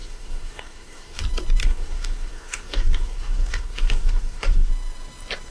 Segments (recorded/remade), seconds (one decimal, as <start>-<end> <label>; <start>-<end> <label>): 0.0-1.2 remade; 1.2-1.6 recorded; 1.6-4.7 remade; 4.7-5.5 recorded